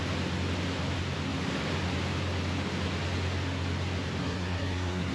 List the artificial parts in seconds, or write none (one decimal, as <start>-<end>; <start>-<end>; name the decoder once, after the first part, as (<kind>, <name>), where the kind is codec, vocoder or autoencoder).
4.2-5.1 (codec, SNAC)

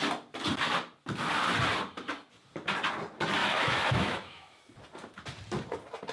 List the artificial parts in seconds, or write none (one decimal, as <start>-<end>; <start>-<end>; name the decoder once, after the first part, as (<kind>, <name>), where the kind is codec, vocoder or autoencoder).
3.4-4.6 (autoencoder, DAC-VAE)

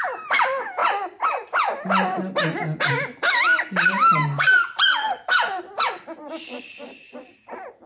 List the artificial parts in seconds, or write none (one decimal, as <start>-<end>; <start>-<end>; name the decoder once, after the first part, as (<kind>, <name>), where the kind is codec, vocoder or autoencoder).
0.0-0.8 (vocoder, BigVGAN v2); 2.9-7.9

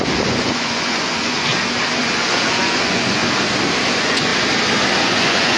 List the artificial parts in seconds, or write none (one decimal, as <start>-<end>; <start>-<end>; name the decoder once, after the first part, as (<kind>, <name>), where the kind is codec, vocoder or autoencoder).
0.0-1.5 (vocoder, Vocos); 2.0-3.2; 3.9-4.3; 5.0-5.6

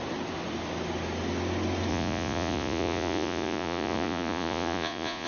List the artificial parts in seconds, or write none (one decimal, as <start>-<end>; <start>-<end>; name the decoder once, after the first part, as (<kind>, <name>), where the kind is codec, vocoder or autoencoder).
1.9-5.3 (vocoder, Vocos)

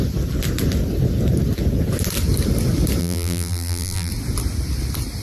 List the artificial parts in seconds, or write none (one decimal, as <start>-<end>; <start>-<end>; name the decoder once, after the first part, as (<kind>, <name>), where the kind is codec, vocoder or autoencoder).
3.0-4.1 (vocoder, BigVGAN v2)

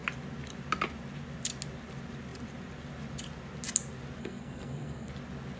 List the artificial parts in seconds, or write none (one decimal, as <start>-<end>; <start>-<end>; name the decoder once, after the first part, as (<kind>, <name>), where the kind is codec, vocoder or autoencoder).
4.2-5.1 (codec, SNAC)

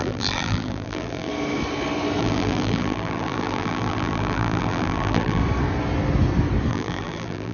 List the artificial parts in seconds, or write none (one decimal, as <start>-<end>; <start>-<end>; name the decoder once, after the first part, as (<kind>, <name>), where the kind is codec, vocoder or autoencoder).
0.0-1.3 (vocoder, BigVGAN v2); 2.2-5.4; 6.7-7.5